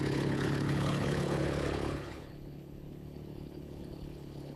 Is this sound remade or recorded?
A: remade